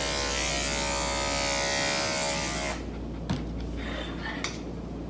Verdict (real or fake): real